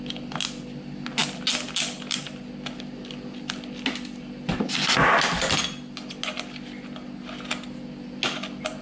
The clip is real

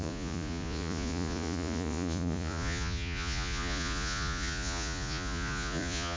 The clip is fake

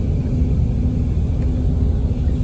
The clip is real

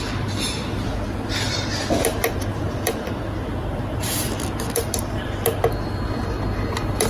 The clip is fake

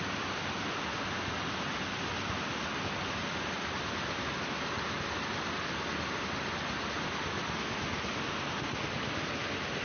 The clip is real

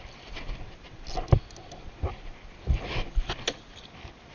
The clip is real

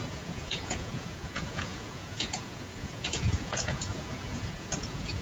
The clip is fake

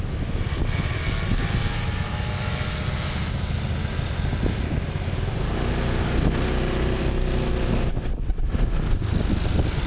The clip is real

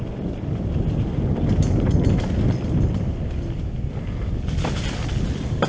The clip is real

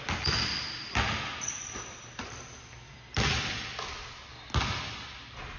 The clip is real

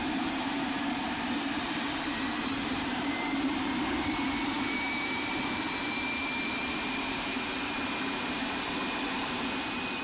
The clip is fake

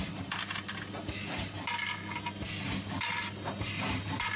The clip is real